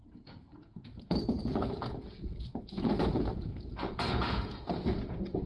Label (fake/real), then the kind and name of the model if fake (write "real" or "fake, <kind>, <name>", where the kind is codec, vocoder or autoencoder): fake, vocoder, Vocos